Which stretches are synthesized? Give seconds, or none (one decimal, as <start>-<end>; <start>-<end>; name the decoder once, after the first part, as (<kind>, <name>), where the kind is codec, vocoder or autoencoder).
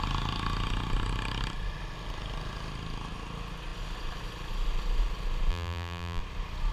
5.5-6.2 (vocoder, BigVGAN v2)